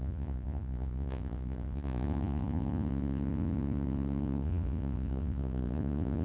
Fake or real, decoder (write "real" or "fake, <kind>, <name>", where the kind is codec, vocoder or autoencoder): fake, vocoder, Vocos